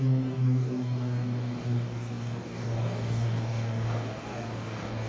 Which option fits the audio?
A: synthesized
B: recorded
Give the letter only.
A